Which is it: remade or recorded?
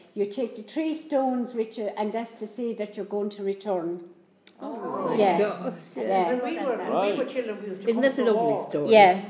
recorded